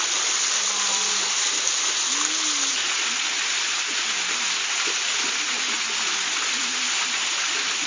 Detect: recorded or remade recorded